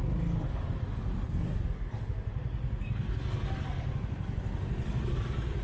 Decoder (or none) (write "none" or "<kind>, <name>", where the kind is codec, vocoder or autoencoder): none